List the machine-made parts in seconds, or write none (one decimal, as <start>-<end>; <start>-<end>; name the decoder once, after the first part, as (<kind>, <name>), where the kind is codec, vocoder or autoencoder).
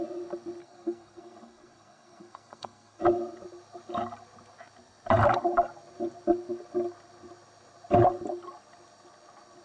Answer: 0.6-3.0 (codec, SNAC)